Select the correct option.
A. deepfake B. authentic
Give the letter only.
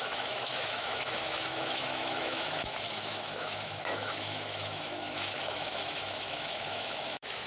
A